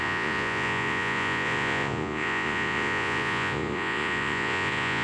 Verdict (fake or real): fake